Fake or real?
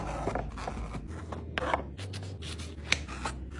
real